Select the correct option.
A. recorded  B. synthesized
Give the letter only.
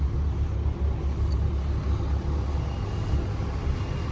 A